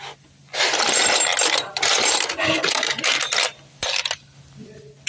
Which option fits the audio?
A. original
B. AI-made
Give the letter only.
A